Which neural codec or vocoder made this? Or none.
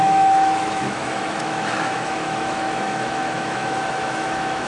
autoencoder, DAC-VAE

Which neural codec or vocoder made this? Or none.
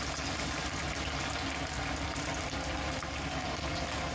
none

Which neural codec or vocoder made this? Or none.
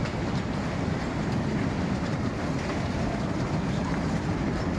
vocoder, BigVGAN v2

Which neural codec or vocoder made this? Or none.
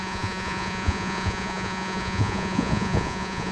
vocoder, Vocos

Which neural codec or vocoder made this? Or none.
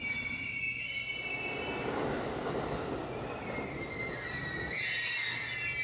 none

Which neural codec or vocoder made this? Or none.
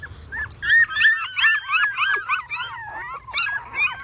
none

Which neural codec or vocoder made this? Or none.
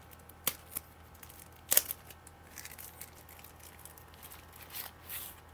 none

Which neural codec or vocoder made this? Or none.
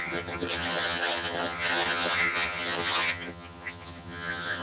vocoder, HiFi-GAN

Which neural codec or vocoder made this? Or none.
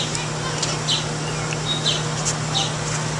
none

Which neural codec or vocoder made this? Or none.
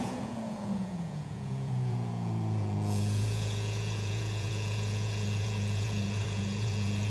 vocoder, Vocos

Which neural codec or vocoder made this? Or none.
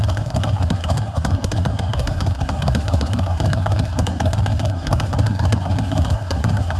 codec, SNAC